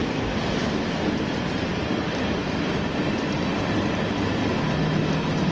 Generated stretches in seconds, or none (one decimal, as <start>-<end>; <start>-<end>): none